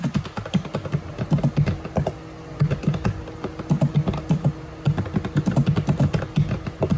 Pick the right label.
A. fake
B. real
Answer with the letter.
B